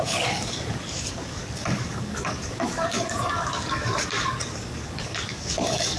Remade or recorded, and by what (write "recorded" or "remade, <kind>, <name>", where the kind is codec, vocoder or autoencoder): remade, codec, DAC